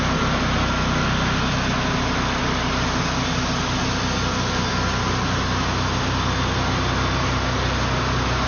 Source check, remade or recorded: recorded